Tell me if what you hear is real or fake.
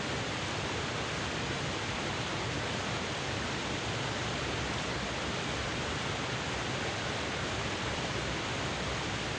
fake